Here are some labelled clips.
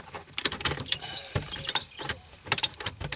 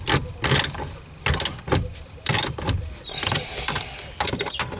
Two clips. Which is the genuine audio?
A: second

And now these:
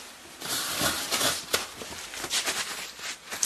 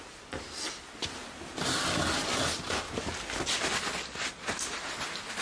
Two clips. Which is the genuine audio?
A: second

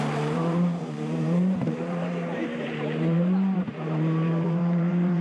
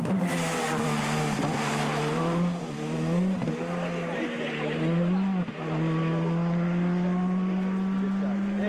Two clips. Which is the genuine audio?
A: second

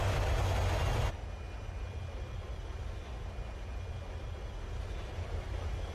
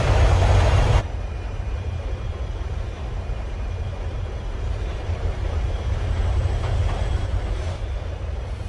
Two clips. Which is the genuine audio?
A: first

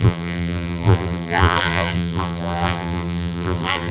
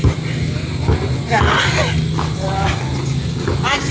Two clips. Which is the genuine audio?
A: second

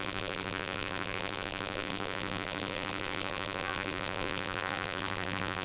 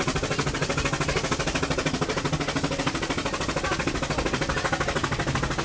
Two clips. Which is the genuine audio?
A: second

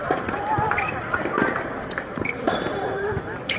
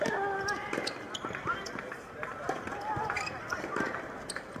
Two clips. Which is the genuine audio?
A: second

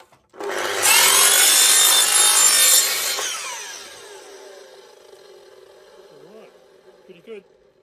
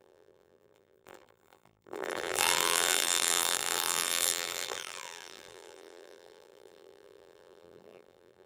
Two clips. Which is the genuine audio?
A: first